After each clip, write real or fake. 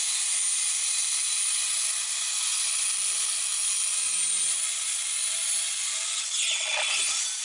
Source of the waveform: real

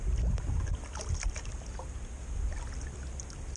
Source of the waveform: real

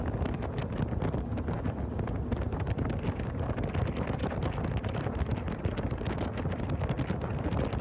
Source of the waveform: real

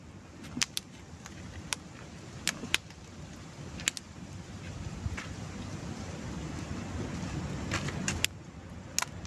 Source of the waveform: real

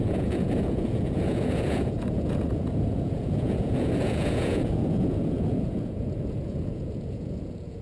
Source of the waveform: fake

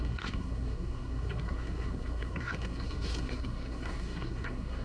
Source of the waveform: fake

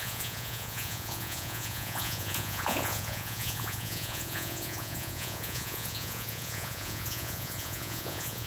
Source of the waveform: fake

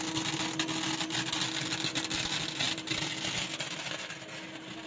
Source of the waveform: real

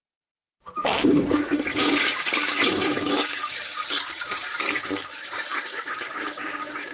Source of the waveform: fake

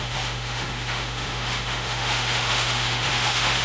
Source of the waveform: fake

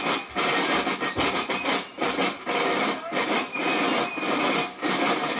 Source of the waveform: real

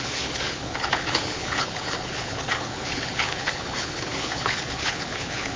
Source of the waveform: fake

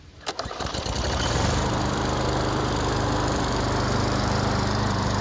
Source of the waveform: fake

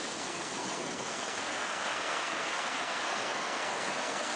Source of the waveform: fake